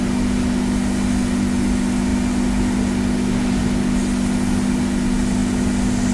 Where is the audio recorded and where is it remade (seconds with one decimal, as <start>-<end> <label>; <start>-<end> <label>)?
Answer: 0.0-6.1 recorded